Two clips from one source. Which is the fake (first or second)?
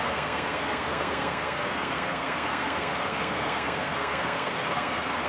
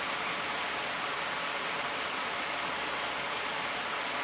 first